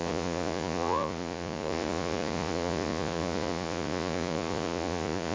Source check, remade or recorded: remade